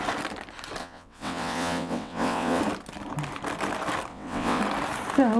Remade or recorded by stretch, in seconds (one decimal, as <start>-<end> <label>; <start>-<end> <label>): 0.0-0.8 recorded; 0.8-2.6 remade; 2.6-4.1 recorded; 4.1-4.6 remade; 4.6-5.4 recorded